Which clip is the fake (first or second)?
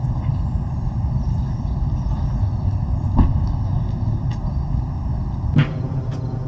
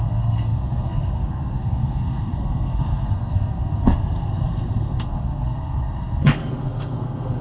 second